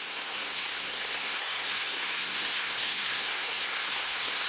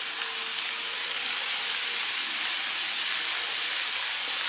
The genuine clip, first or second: second